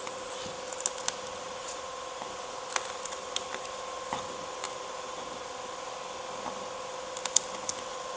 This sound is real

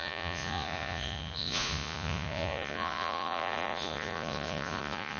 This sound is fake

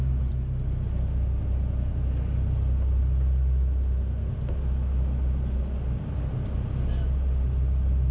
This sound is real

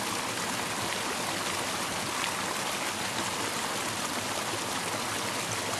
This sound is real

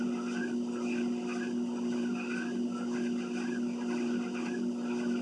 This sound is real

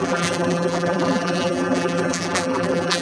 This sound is fake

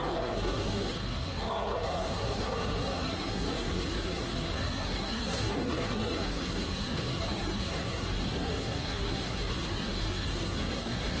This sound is fake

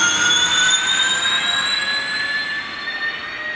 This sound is real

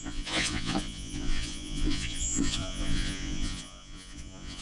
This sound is fake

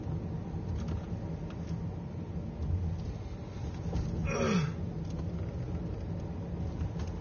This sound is real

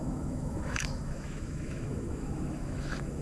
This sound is fake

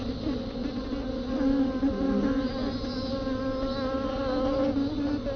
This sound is real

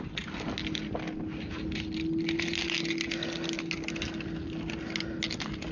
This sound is real